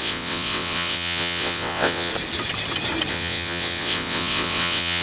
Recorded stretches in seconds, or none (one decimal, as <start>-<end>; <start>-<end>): 2.1-3.1